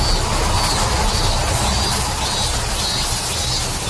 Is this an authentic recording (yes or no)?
yes